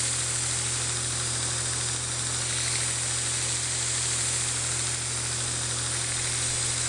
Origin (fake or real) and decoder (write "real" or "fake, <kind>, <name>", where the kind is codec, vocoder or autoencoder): real